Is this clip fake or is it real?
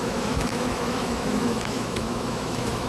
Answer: fake